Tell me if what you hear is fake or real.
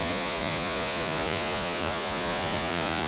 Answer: fake